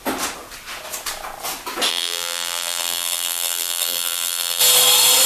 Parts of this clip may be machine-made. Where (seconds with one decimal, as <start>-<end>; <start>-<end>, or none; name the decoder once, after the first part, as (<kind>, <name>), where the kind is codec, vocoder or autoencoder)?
1.9-4.6 (vocoder, BigVGAN v2)